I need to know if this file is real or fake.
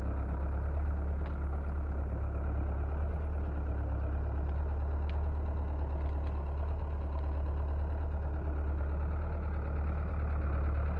real